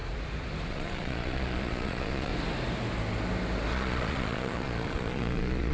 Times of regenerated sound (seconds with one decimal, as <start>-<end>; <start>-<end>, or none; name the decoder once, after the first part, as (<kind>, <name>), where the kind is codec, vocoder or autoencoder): 0.7-2.3 (vocoder, Vocos); 3.7-5.7